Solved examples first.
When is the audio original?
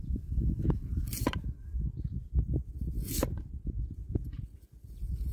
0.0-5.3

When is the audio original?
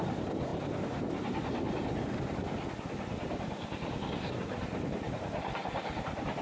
0.0-6.4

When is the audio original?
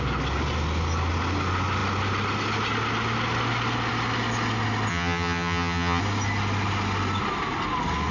0.0-4.9; 6.0-8.1